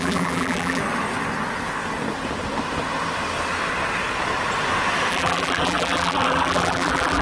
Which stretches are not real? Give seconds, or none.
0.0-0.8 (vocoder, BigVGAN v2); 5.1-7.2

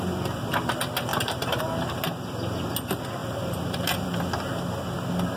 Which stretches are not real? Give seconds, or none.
1.1-1.6 (vocoder, BigVGAN v2); 3.2-4.2

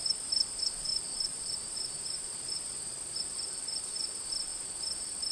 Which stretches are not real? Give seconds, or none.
0.0-0.5 (vocoder, BigVGAN v2); 0.9-4.1

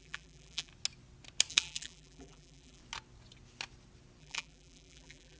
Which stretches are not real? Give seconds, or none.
0.0-0.7 (vocoder, BigVGAN v2); 1.5-2.8; 4.2-5.4

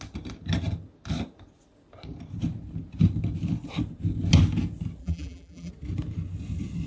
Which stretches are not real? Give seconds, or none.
5.0-5.7 (vocoder, BigVGAN v2)

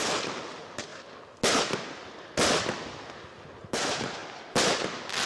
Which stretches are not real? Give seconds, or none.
0.0-0.9 (vocoder, BigVGAN v2); 3.6-4.2

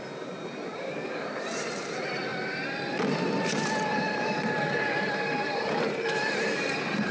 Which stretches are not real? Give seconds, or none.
0.0-2.3 (vocoder, BigVGAN v2); 4.0-7.1